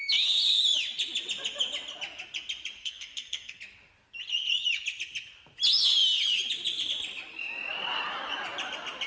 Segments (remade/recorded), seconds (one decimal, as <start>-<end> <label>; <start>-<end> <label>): 0.0-2.8 recorded; 2.8-3.6 remade; 3.6-9.1 recorded